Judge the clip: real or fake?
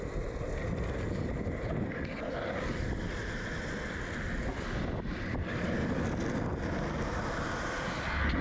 real